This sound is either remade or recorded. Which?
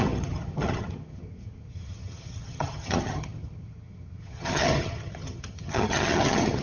remade